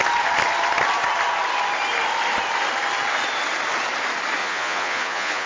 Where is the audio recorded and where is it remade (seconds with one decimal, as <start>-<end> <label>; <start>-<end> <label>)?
0.0-4.4 recorded; 4.4-5.5 remade